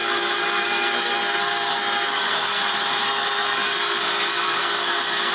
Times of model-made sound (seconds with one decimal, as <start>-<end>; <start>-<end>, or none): 0.0-2.6; 3.0-5.3

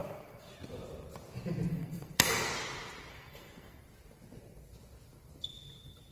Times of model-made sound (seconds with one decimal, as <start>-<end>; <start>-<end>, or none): 0.0-0.5; 1.7-2.5; 3.1-3.8

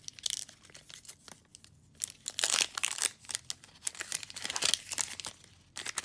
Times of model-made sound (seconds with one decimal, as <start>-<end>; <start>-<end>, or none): none

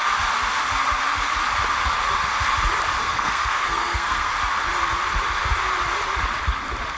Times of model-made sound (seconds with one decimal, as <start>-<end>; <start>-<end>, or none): 3.0-4.3

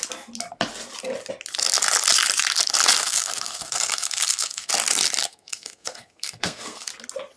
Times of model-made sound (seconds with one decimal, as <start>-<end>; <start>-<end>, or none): 3.0-4.7; 5.2-6.9